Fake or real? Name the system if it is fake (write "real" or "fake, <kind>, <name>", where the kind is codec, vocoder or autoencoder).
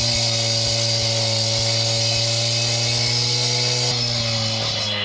real